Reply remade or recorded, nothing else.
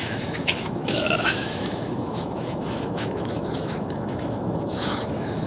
remade